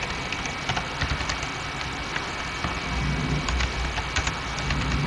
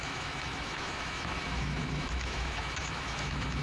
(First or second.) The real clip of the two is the first